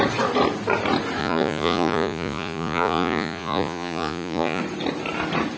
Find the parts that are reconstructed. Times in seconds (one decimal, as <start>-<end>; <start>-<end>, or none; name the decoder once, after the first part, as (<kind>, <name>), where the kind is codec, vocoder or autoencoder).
1.2-4.6 (vocoder, Vocos)